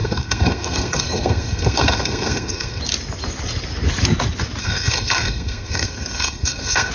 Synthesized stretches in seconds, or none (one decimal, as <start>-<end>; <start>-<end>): 0.0-2.8; 4.6-6.9